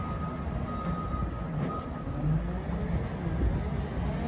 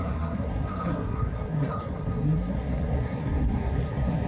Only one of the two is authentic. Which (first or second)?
first